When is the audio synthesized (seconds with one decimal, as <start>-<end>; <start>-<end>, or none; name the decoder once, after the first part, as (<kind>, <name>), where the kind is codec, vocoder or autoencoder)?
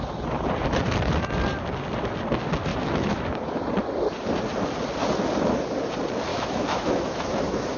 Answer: 2.7-3.6 (autoencoder, DAC-VAE); 6.3-7.8